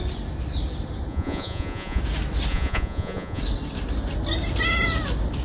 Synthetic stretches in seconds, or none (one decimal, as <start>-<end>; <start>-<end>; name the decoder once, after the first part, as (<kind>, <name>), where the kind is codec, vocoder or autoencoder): 1.1-2.0 (vocoder, Vocos); 2.5-3.4